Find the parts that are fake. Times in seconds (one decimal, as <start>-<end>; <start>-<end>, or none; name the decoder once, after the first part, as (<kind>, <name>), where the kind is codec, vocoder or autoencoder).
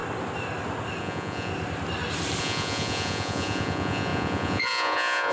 1.0-1.5 (vocoder, Vocos); 2.4-5.3